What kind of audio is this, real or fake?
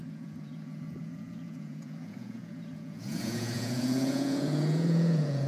fake